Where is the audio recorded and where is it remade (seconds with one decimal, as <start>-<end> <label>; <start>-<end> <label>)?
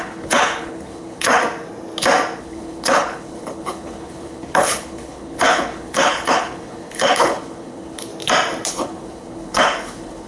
0.0-1.4 remade; 1.4-2.4 recorded; 2.4-8.1 remade; 8.1-8.7 recorded; 8.7-10.3 remade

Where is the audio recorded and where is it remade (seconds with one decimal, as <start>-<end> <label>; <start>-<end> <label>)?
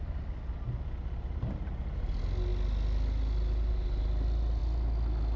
0.0-5.4 recorded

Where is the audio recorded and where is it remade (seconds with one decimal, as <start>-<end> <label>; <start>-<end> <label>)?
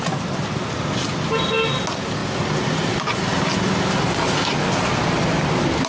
0.0-5.9 recorded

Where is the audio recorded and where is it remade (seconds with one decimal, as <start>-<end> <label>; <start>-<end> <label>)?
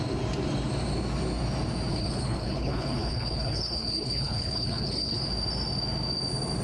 0.0-1.9 recorded; 1.9-5.2 remade; 5.2-6.6 recorded